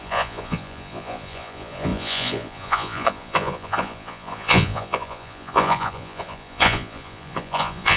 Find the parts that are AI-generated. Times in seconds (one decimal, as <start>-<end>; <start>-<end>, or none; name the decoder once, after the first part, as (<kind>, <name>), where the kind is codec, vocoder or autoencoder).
0.0-8.0 (vocoder, Vocos)

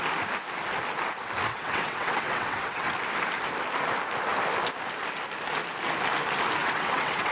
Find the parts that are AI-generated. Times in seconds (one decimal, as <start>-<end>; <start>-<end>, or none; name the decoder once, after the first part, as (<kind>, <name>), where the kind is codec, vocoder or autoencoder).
1.5-2.9 (vocoder, WaveNeXt); 6.6-7.3

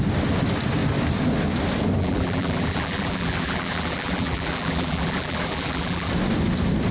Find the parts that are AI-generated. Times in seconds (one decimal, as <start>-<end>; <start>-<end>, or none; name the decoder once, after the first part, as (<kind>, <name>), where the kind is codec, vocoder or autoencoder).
2.0-6.1 (vocoder, BigVGAN v2)

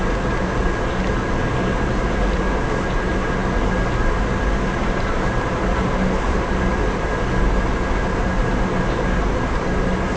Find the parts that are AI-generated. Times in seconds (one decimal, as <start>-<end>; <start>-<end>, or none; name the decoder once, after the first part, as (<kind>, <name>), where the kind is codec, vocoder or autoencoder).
none

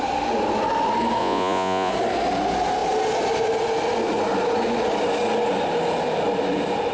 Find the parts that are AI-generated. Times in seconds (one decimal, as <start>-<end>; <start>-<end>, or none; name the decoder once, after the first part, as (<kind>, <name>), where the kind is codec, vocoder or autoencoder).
1.2-1.9 (vocoder, Vocos)

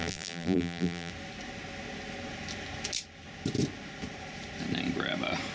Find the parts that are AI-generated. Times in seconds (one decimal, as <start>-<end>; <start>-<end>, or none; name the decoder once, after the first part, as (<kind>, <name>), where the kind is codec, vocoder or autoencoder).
0.0-1.1 (vocoder, BigVGAN v2)

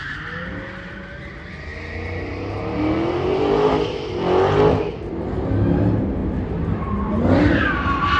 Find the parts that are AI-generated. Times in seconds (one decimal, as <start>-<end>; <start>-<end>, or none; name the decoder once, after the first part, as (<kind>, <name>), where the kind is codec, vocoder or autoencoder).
none

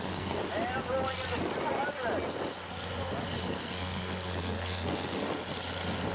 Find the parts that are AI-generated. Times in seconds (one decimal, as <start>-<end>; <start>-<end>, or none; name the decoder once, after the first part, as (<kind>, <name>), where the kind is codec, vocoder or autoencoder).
0.0-0.4 (codec, SNAC); 3.4-5.2